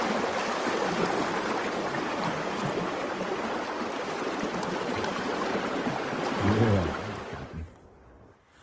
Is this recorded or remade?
recorded